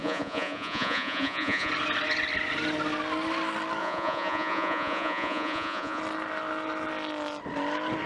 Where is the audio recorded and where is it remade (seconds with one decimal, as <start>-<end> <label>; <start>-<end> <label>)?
0.0-1.7 remade; 1.7-3.8 recorded; 3.8-6.0 remade; 6.0-8.1 recorded

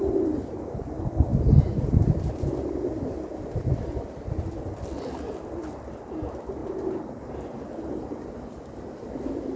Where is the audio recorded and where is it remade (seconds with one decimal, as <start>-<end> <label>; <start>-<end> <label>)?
0.0-9.6 recorded